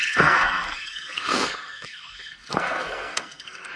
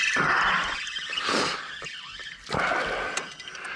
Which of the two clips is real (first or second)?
second